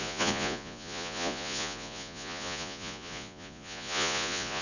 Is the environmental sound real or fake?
fake